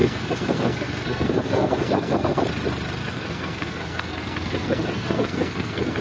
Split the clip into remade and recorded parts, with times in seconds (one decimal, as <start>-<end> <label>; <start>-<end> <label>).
0.0-2.4 remade; 2.4-3.0 recorded; 3.0-6.0 remade